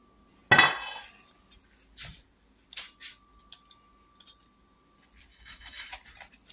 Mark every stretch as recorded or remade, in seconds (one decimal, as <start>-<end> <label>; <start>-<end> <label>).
0.0-5.3 recorded; 5.3-5.9 remade; 5.9-6.5 recorded

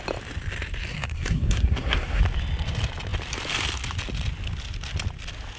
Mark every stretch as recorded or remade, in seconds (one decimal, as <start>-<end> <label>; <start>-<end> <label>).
0.0-0.9 recorded; 0.9-2.2 remade; 2.2-5.6 recorded

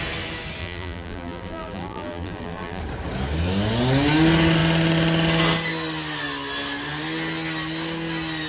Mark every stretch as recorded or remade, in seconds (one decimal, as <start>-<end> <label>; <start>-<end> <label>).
0.0-0.6 recorded; 0.6-2.8 remade; 2.8-8.5 recorded

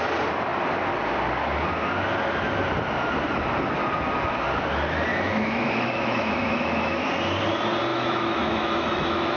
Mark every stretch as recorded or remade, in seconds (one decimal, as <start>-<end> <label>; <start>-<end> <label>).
0.0-5.1 recorded; 5.1-7.1 remade; 7.1-7.9 recorded; 7.9-9.4 remade